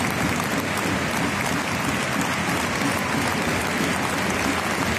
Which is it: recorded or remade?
recorded